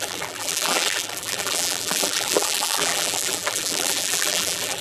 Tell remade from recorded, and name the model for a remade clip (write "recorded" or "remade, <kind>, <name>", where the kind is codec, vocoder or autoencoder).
remade, vocoder, BigVGAN v2